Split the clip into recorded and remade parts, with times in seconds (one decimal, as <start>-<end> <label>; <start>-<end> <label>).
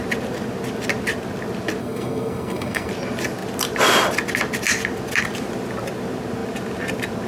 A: 0.0-1.8 recorded; 1.8-2.9 remade; 2.9-7.3 recorded